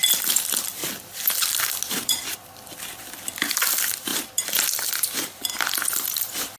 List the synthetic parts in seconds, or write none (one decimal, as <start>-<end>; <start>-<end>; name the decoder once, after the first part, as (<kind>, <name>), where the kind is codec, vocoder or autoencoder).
none